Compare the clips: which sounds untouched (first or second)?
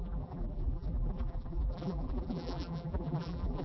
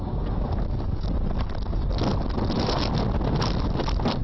second